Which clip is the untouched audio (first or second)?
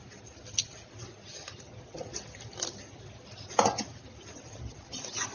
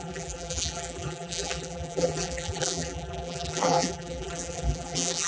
first